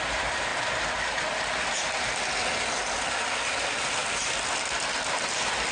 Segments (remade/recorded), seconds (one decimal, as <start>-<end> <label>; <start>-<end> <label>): 0.0-5.7 recorded